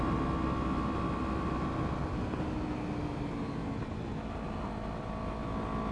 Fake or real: real